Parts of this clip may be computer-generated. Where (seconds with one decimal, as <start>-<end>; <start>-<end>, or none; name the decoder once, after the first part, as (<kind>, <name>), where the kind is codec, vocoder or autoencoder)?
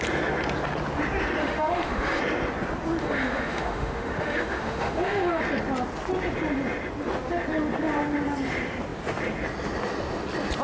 1.4-2.2 (autoencoder, DAC-VAE); 3.0-5.4